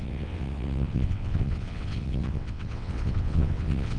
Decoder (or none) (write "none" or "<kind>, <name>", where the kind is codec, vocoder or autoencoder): vocoder, WaveNeXt